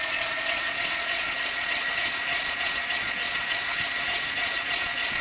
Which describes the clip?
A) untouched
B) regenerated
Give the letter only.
B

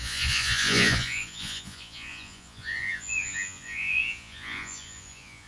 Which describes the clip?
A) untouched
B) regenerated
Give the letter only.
B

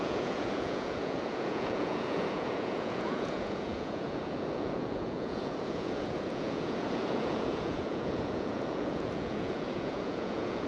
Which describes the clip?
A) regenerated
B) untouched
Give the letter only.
A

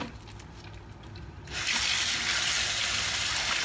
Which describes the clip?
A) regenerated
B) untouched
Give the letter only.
B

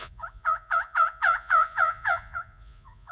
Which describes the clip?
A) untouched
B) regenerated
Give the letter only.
B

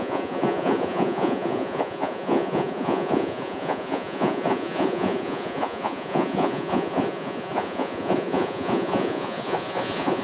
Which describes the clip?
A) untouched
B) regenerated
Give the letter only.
B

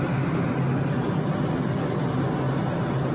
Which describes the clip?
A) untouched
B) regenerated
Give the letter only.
A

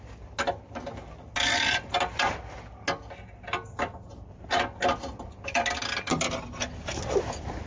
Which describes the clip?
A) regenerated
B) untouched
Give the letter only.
B